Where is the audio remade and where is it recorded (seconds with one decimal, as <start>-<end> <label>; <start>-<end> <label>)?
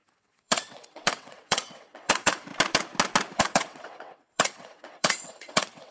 0.0-2.5 remade; 2.5-3.3 recorded; 3.3-5.9 remade